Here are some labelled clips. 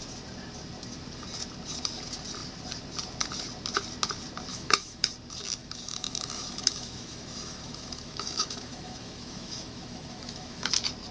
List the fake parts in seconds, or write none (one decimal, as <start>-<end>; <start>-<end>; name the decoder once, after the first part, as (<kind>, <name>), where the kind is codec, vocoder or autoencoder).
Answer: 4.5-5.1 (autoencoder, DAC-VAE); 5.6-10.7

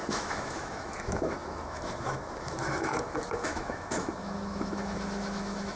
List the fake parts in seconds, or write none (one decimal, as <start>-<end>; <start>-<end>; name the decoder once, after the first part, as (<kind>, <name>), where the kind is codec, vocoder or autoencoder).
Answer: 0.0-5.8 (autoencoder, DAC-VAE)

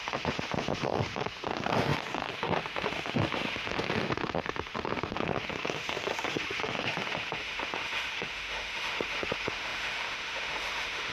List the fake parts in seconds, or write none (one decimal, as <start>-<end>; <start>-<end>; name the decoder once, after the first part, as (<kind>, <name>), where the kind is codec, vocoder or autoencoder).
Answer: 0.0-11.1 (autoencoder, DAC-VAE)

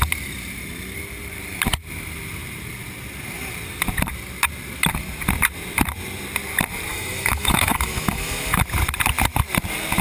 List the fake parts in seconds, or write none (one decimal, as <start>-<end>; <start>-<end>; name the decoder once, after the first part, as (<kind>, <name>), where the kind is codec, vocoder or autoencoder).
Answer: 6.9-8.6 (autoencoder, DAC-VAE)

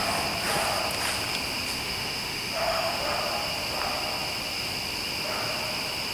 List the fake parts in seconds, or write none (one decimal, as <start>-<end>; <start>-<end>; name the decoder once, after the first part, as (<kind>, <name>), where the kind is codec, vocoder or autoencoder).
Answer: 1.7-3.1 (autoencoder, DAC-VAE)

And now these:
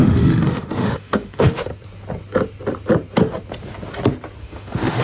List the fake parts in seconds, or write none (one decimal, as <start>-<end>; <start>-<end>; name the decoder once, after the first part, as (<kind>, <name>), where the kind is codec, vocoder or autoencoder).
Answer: 0.0-1.7 (autoencoder, DAC-VAE); 4.4-5.0

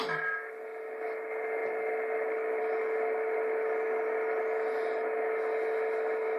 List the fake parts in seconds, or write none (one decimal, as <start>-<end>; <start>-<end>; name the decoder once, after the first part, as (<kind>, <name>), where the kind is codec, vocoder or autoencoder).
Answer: none